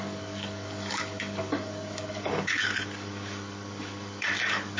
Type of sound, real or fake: fake